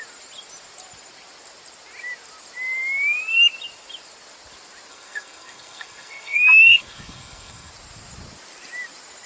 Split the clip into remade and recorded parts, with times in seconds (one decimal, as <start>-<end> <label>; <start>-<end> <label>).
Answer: 0.0-4.9 recorded; 4.9-7.7 remade; 7.7-9.3 recorded